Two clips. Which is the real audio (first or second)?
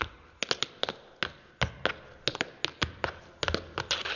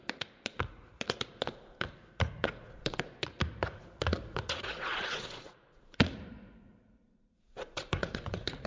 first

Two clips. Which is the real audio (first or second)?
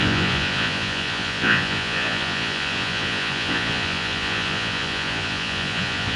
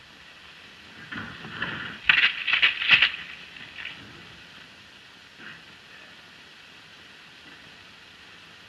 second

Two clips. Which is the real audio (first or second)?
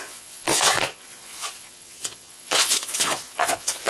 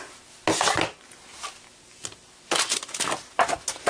second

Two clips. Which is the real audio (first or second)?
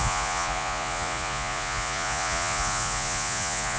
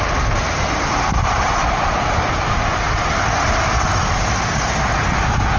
second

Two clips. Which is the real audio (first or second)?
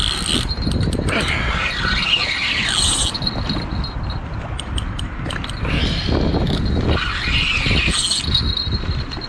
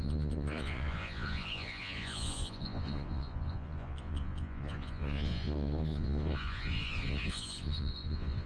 first